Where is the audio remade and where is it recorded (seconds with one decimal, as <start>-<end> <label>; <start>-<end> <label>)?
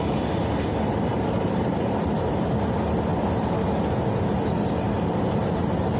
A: 0.0-1.1 recorded; 1.1-1.9 remade; 1.9-6.0 recorded